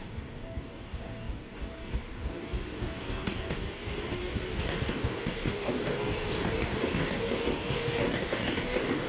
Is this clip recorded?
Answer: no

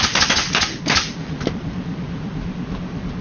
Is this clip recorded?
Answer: yes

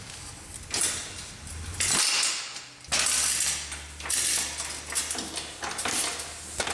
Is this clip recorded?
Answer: yes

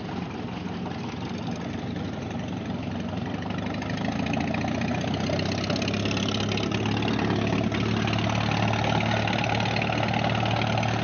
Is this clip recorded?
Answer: yes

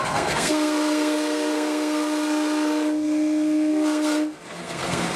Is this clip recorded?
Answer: no